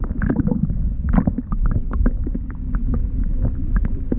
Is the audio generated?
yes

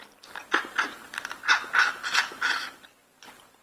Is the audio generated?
no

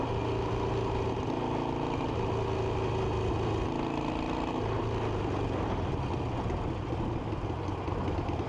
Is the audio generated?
no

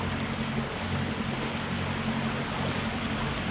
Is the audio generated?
no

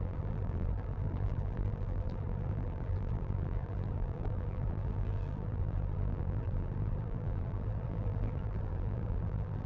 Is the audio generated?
yes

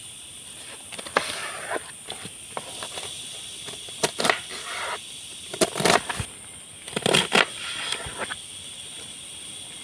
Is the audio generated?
yes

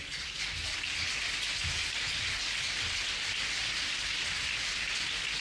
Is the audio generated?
no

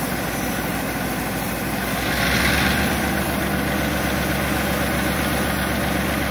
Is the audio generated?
no